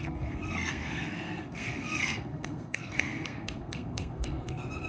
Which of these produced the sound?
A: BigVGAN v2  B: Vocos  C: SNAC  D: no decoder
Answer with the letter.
C